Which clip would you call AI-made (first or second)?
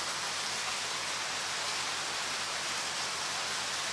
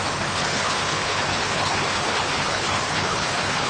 second